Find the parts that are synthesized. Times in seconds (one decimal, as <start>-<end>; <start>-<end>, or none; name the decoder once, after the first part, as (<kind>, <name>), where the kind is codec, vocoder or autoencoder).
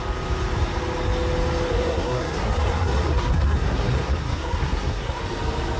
1.7-5.2 (codec, SNAC)